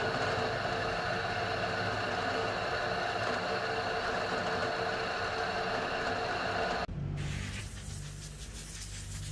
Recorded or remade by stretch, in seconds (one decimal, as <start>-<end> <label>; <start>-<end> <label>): 0.0-9.3 recorded